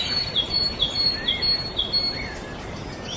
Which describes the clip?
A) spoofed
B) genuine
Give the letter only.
B